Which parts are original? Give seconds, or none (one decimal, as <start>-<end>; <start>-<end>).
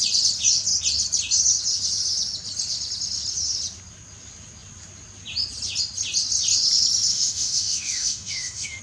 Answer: 0.0-7.1